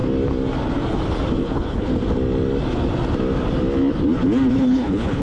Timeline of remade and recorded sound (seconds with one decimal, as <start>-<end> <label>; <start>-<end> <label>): 0.0-1.3 recorded; 1.3-1.9 remade; 1.9-4.5 recorded; 4.5-5.2 remade